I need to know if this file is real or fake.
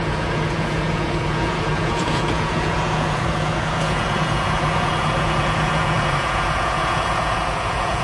fake